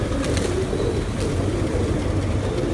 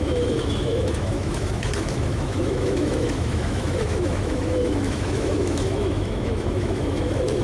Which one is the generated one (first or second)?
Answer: second